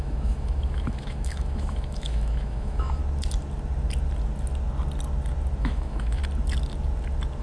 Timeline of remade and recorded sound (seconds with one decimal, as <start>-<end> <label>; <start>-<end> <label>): 0.0-3.0 remade; 3.0-5.6 recorded; 5.6-6.2 remade; 6.2-7.4 recorded